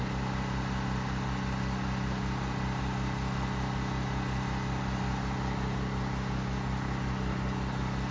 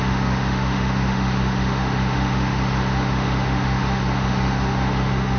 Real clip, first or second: first